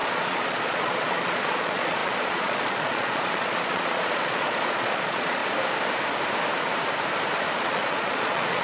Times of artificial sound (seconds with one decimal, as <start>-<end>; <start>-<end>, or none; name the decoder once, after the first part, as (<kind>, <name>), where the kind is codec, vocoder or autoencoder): 0.0-5.4 (vocoder, Vocos); 7.6-8.6